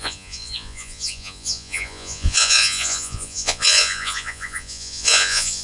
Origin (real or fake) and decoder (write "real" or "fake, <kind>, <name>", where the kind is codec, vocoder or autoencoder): fake, vocoder, Vocos